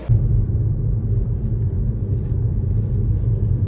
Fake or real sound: real